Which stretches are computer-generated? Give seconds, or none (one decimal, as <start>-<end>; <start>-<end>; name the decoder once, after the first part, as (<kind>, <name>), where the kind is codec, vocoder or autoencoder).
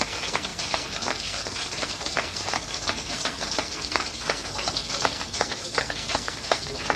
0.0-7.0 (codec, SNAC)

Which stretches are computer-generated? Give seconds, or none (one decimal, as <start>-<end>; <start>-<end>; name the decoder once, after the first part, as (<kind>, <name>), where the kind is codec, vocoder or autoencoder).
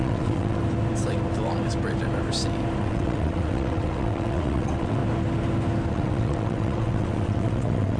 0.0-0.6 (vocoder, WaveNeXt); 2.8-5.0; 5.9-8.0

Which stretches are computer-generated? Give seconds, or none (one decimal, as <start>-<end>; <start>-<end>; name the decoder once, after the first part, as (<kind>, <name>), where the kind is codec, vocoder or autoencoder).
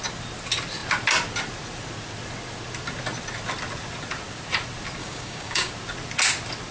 5.0-5.7 (codec, DAC)